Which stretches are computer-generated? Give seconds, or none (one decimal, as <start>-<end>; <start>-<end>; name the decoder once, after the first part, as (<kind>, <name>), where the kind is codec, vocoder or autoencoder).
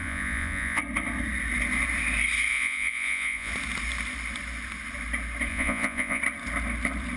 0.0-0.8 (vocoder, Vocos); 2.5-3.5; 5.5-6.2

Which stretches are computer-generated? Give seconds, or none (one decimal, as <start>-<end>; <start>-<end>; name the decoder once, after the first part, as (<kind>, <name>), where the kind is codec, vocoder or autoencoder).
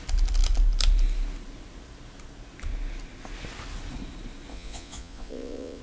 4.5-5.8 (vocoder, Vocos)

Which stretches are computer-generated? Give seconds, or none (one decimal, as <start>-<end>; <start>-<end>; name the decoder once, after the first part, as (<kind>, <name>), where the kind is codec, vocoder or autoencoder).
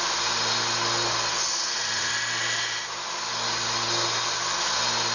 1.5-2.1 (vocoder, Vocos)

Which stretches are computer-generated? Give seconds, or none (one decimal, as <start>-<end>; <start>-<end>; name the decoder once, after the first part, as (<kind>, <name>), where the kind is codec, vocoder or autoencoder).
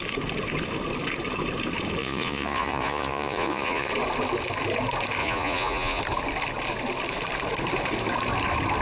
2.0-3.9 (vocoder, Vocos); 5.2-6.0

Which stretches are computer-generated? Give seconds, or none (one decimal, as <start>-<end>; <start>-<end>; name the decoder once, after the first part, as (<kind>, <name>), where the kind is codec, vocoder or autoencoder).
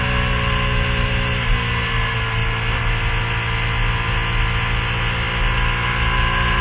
none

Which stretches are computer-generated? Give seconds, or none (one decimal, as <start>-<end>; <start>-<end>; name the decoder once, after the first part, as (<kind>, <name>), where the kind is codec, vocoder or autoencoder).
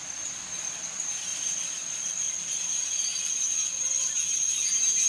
none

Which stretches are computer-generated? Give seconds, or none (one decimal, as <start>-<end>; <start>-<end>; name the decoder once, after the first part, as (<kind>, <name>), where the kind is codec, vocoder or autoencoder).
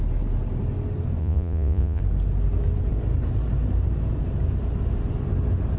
1.2-2.0 (vocoder, Vocos)